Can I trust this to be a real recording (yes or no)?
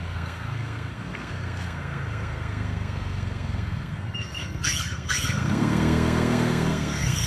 no